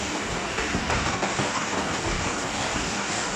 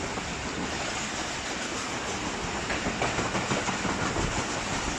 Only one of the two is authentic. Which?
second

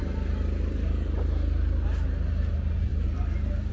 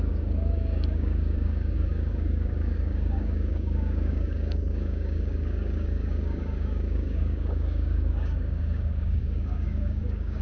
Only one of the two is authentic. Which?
first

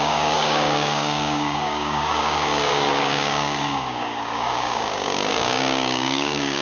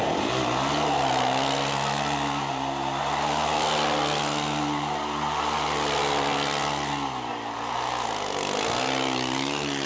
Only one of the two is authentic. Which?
second